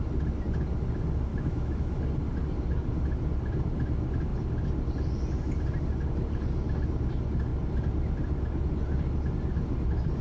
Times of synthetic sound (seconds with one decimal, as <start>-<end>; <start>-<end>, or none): 1.3-2.0